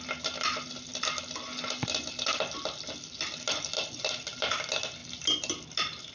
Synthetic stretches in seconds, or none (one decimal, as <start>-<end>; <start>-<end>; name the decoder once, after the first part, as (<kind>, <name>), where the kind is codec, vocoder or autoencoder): none